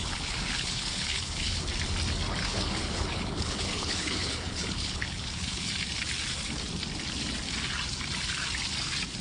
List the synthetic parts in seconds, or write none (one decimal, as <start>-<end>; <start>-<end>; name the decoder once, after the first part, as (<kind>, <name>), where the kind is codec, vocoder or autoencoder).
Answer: 0.0-1.6 (codec, HILCodec); 2.4-5.7